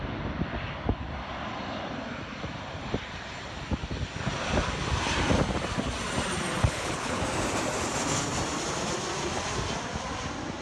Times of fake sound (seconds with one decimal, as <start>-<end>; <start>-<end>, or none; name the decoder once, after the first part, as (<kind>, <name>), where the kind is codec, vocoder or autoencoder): 6.6-7.2 (codec, HILCodec)